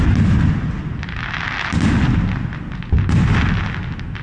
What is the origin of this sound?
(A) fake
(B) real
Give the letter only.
B